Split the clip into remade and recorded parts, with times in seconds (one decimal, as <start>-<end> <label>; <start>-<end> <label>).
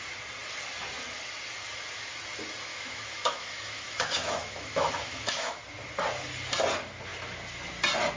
0.0-2.7 recorded; 2.7-5.6 remade; 5.6-8.2 recorded